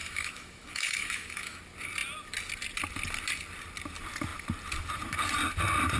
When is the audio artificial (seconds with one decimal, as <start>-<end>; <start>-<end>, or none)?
0.0-1.6